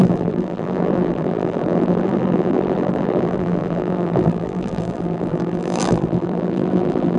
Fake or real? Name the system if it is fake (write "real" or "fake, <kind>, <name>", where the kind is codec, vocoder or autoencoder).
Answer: fake, vocoder, BigVGAN v2